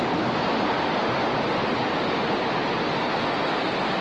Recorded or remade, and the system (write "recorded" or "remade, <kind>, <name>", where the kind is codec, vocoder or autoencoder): recorded